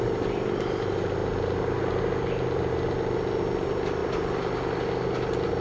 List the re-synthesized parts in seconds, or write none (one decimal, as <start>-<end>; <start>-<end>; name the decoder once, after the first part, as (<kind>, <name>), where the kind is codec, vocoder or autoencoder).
0.0-1.2 (vocoder, BigVGAN v2); 3.6-4.0

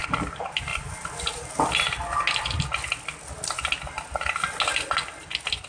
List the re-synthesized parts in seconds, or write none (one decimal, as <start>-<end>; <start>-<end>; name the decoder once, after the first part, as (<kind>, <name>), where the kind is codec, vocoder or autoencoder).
none

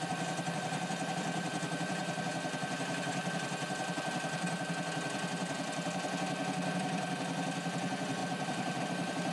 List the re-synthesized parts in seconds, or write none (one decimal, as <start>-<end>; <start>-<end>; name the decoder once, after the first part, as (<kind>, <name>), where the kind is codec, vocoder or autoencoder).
0.0-2.0 (vocoder, BigVGAN v2); 6.7-8.2; 8.8-9.3

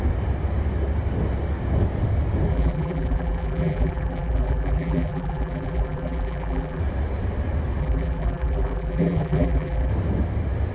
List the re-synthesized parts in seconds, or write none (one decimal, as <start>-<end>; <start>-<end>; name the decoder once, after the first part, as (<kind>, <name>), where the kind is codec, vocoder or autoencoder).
2.5-6.8 (vocoder, BigVGAN v2); 7.8-9.9

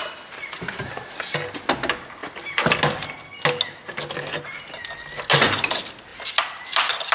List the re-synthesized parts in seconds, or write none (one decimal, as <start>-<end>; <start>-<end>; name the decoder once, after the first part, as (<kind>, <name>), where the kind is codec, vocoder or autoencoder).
0.0-1.1 (vocoder, BigVGAN v2); 2.2-3.2

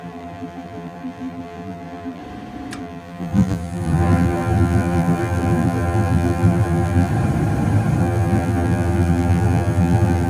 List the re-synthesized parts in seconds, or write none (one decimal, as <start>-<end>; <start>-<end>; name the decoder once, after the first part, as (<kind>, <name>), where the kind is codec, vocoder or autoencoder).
0.0-2.2 (vocoder, BigVGAN v2); 2.8-7.1; 8.0-10.3